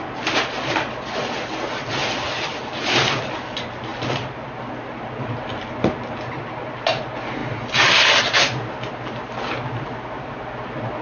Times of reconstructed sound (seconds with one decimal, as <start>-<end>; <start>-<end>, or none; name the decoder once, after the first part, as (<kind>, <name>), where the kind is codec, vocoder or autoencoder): none